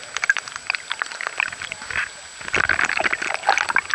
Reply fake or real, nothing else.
real